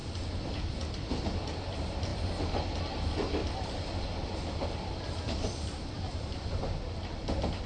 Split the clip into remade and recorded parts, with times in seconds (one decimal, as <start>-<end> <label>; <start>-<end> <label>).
0.0-0.7 remade; 0.7-3.4 recorded; 3.4-6.6 remade; 6.6-7.7 recorded

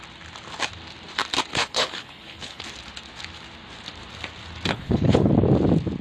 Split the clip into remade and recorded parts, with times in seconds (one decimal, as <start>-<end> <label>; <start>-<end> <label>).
0.0-1.5 recorded; 1.5-2.6 remade; 2.6-4.7 recorded; 4.7-5.3 remade; 5.3-6.0 recorded

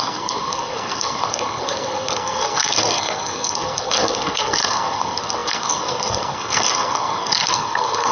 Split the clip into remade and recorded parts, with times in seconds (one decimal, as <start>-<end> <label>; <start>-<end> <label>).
0.0-8.1 remade

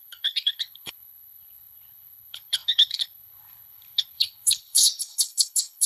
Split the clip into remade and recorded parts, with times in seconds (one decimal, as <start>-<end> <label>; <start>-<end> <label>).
0.0-5.9 remade

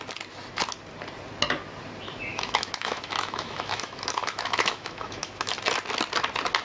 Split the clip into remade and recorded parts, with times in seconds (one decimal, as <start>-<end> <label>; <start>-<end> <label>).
0.0-2.3 recorded; 2.3-5.5 remade; 5.5-6.6 recorded

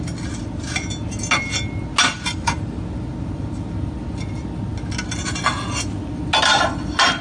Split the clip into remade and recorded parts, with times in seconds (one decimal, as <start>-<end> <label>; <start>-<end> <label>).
0.0-7.2 recorded

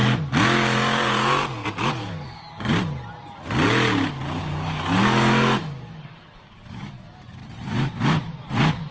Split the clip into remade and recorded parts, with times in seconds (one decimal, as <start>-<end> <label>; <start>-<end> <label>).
0.0-1.7 recorded; 1.7-2.7 remade; 2.7-4.4 recorded; 4.4-7.4 remade; 7.4-8.9 recorded